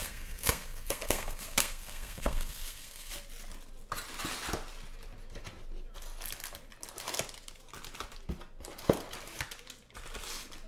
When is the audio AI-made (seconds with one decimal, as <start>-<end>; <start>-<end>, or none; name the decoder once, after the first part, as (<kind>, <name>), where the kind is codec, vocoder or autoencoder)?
0.0-3.1 (codec, SNAC)